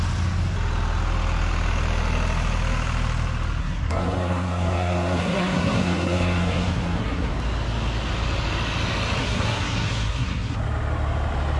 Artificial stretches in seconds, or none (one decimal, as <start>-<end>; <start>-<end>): 3.6-7.3; 9.2-10.6